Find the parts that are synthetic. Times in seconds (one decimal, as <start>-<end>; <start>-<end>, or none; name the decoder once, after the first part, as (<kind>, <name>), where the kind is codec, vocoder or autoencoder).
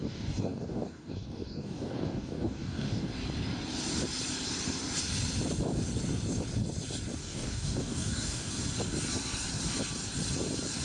0.0-3.1 (codec, DAC); 7.2-8.5